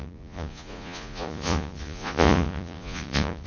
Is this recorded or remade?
remade